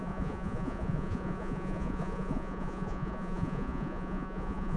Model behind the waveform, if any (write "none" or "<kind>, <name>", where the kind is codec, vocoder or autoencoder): vocoder, Vocos